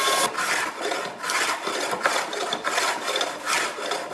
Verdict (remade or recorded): recorded